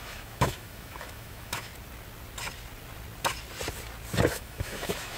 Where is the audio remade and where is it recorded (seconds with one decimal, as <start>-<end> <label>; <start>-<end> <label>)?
0.0-1.7 remade; 1.7-4.3 recorded; 4.3-5.2 remade